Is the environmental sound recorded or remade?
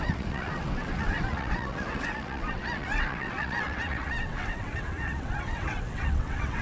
remade